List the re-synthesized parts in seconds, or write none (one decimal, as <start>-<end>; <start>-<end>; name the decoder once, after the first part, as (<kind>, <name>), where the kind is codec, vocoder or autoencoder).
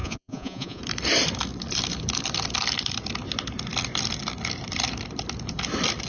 0.0-0.8 (vocoder, Vocos)